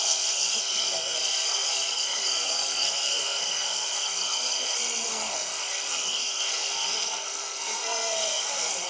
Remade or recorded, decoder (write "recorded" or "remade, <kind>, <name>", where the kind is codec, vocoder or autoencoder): remade, codec, SNAC